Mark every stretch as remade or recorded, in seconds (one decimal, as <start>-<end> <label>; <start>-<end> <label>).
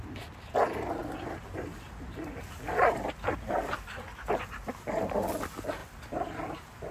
0.0-6.9 recorded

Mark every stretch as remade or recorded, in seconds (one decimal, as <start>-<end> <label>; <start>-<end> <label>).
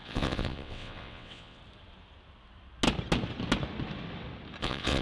0.0-1.6 remade; 1.6-4.6 recorded; 4.6-5.0 remade